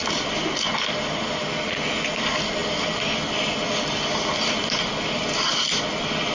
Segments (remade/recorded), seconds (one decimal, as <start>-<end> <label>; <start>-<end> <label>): 0.0-2.6 recorded; 2.6-3.3 remade; 3.3-6.3 recorded